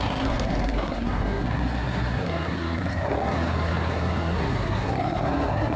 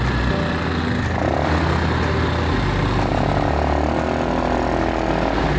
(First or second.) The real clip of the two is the second